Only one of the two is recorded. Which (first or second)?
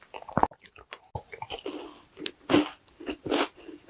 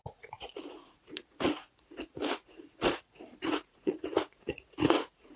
first